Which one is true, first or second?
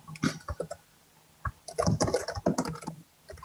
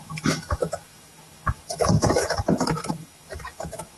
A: first